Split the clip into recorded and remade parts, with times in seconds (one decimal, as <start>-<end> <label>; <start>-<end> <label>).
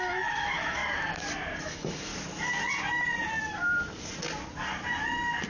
0.0-0.8 remade; 0.8-1.6 recorded; 1.6-2.1 remade; 2.1-5.5 recorded